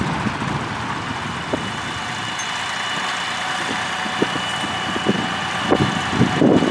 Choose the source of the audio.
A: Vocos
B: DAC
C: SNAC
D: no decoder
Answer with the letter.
D